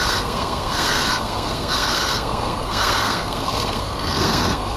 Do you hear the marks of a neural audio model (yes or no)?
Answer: yes